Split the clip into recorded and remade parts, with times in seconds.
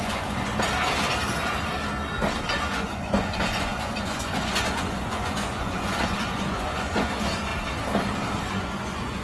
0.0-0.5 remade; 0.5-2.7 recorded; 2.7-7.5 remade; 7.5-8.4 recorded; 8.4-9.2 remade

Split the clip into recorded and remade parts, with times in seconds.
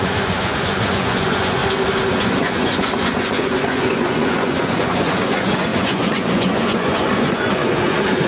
0.0-1.6 remade; 1.6-2.1 recorded; 2.1-8.3 remade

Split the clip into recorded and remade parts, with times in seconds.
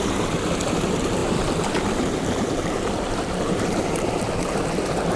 0.0-1.2 recorded; 1.2-4.3 remade; 4.3-5.2 recorded